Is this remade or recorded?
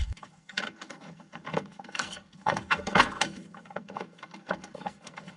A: remade